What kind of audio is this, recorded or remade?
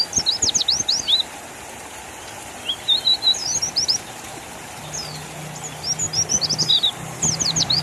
recorded